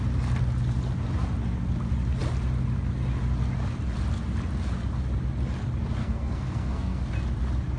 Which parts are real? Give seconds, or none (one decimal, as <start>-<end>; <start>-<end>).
0.0-6.0; 7.0-7.8